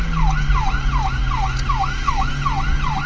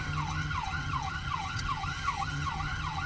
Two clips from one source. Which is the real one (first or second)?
first